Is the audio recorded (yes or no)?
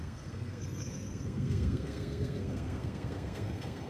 no